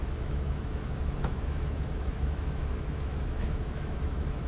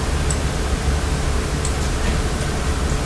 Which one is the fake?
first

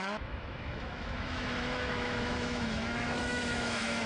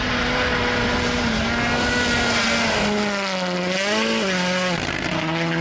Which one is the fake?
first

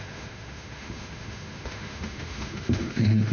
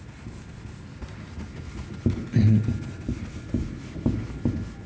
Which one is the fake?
first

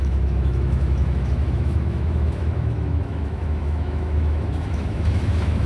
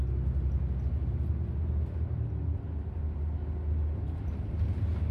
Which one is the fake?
first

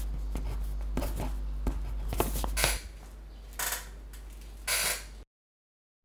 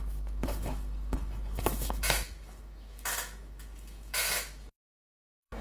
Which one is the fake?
second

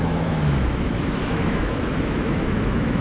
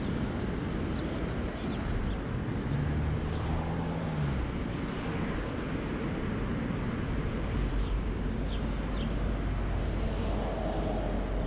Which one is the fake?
first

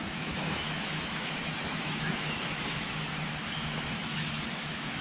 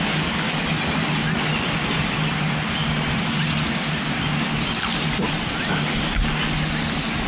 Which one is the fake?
first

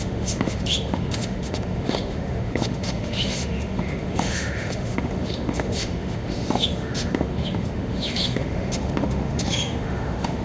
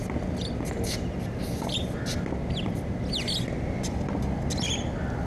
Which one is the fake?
first